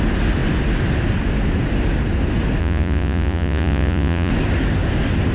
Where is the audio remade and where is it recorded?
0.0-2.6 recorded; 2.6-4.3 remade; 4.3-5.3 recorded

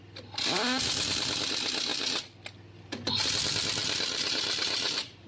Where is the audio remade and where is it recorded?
0.0-3.8 recorded; 3.8-5.3 remade

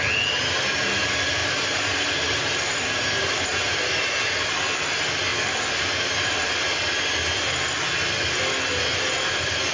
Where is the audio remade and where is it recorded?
0.0-1.4 recorded; 1.4-3.8 remade; 3.8-9.7 recorded